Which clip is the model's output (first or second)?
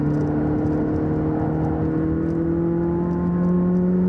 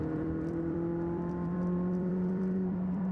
second